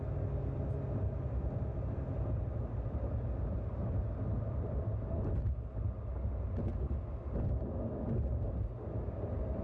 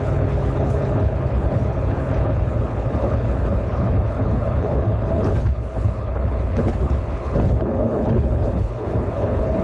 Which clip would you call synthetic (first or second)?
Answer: second